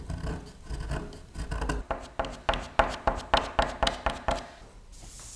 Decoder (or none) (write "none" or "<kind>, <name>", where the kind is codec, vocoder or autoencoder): none